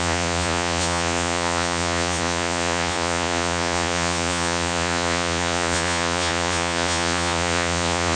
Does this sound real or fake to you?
fake